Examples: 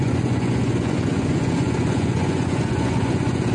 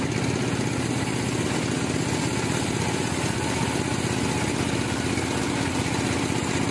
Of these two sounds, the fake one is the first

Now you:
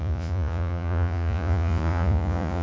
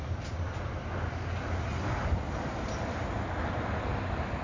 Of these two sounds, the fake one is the first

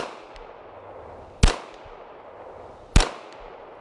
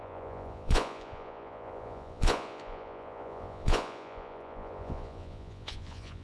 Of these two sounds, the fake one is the second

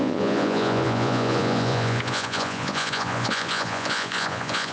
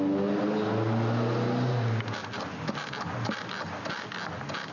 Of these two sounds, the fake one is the first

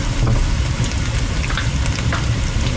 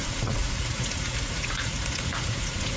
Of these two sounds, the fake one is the second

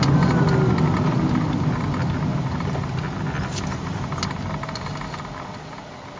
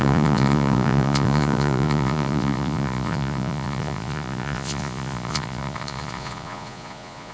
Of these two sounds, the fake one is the second